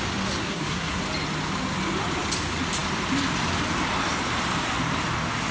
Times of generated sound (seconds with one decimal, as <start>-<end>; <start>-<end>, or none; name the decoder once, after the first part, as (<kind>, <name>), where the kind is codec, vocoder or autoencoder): 0.4-1.0 (codec, SNAC)